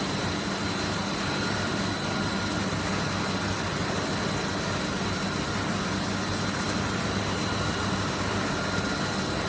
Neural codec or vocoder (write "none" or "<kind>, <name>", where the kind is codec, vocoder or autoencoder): none